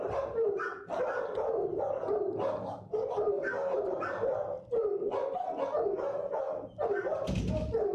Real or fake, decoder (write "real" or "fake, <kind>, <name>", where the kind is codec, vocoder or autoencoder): real